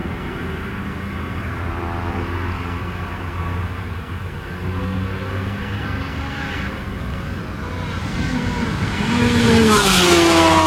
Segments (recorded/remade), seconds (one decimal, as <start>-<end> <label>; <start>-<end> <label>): 0.0-1.6 remade; 1.6-2.1 recorded; 2.1-7.4 remade; 7.4-8.0 recorded; 8.0-10.7 remade